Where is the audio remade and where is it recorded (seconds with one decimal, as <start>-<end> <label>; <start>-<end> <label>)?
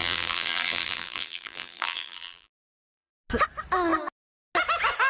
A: 0.0-3.1 remade; 3.1-5.1 recorded